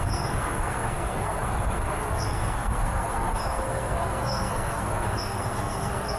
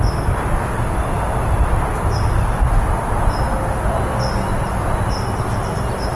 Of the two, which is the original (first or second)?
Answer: second